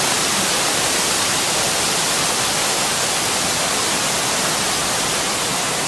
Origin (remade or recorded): recorded